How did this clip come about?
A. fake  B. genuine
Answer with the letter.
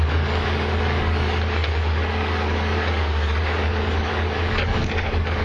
A